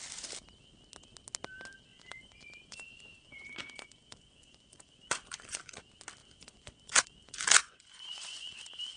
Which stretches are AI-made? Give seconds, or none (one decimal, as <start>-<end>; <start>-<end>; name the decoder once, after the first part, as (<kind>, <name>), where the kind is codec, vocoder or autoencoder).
1.9-5.8 (vocoder, Vocos); 6.2-8.6